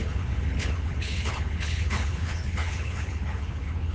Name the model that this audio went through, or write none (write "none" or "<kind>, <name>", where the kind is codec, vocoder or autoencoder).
codec, HILCodec